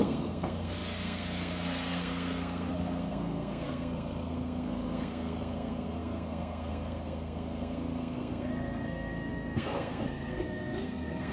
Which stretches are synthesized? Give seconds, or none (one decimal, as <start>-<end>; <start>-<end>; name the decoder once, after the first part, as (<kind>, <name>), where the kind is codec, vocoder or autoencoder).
0.0-11.3 (codec, SNAC)